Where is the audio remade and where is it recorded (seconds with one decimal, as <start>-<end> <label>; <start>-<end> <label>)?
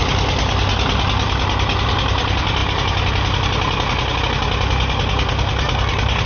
0.0-6.3 recorded